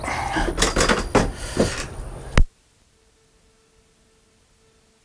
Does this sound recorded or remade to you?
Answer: recorded